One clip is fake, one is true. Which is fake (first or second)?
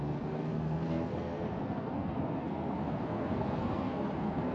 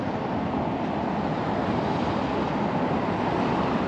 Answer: first